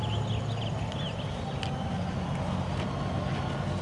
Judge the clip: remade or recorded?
recorded